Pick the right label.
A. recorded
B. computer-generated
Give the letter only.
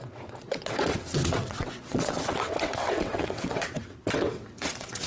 B